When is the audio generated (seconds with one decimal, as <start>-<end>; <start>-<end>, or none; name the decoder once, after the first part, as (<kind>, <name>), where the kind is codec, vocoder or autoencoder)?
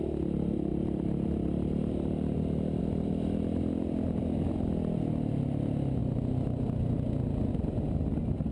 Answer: none